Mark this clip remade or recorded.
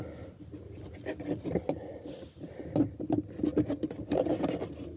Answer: recorded